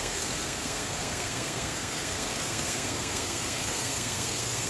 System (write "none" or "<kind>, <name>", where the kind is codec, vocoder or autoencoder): codec, SNAC